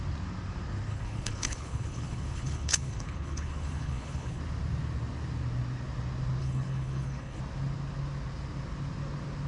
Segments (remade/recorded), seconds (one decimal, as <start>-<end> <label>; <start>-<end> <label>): 0.0-0.9 recorded; 0.9-4.4 remade; 4.4-6.4 recorded; 6.4-7.4 remade; 7.4-9.5 recorded